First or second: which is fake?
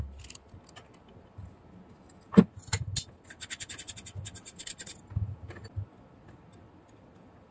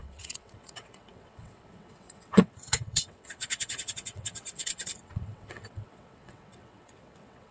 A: second